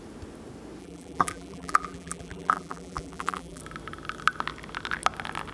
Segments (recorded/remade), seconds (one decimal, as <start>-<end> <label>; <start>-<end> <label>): 0.0-0.8 recorded; 0.8-3.6 remade; 3.6-5.5 recorded